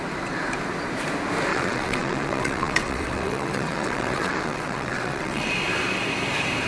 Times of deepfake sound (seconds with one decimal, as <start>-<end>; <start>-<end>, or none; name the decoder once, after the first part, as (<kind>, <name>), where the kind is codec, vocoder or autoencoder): 1.5-5.5 (vocoder, WaveNeXt)